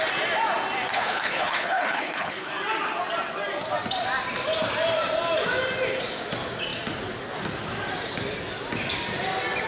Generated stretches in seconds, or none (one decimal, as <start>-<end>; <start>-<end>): 0.9-2.5